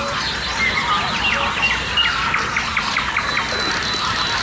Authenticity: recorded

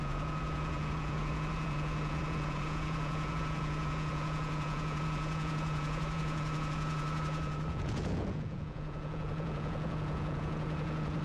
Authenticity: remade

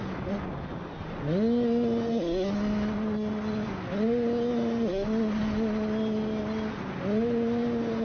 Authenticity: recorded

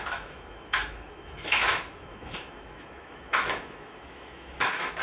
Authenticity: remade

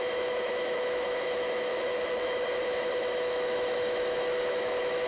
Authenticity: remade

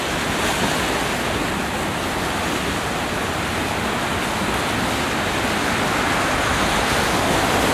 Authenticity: recorded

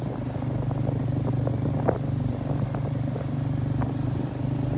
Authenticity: recorded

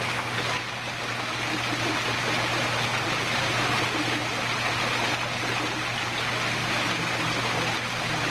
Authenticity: recorded